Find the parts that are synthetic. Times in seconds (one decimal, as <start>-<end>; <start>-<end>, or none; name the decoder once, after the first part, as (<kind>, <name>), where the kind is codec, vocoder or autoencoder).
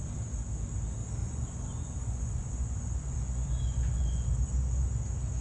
1.2-4.4 (vocoder, Vocos)